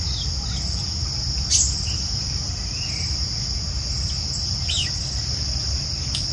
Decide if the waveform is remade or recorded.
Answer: recorded